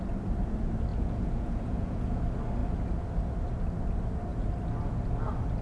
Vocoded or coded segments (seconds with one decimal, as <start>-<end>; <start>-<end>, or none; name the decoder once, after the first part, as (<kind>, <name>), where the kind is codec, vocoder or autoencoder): 0.9-2.2 (vocoder, Vocos)

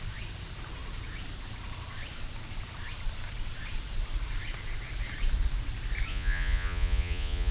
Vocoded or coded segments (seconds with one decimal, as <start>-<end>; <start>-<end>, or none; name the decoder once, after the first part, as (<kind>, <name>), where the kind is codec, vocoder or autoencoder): 6.1-7.5 (vocoder, Vocos)

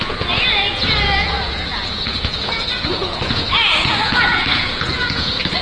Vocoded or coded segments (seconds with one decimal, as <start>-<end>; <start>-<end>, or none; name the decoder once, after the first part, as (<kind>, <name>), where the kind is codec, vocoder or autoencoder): 0.0-5.6 (vocoder, Vocos)

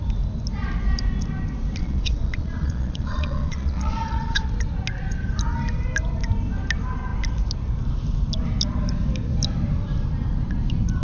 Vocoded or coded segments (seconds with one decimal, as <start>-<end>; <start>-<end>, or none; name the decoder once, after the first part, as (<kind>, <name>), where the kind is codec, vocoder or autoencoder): 1.8-4.5 (vocoder, Vocos)